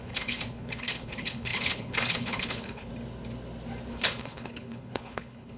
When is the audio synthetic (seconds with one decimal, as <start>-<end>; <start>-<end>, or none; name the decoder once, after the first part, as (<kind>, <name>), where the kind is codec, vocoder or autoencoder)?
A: 0.0-2.9 (codec, HILCodec); 3.9-5.6